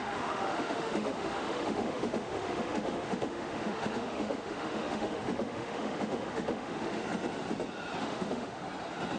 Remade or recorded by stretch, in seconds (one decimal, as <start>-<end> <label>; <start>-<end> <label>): 0.0-7.0 remade; 7.0-8.0 recorded; 8.0-8.6 remade; 8.6-9.2 recorded